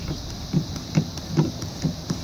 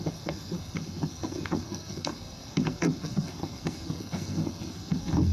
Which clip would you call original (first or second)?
first